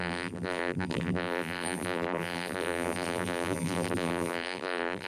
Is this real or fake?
fake